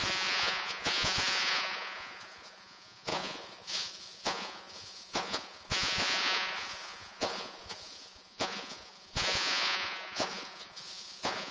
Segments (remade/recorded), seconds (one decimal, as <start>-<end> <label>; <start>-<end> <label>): 0.0-11.5 remade